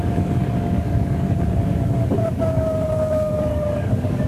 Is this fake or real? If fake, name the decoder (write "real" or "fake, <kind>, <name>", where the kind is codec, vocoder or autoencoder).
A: fake, codec, DAC